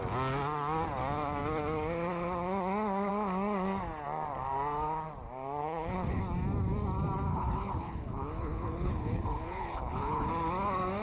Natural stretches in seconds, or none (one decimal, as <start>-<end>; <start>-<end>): 0.0-5.6; 6.2-7.3; 10.3-11.0